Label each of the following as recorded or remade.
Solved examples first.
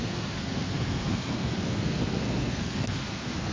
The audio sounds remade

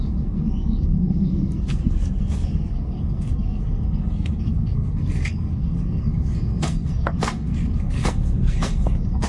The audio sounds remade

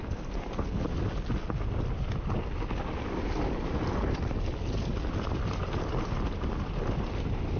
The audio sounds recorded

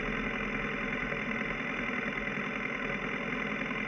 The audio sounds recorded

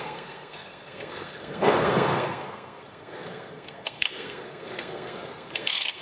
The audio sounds remade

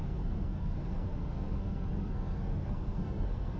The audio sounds remade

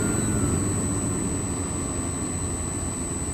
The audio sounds recorded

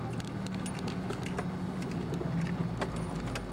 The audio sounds recorded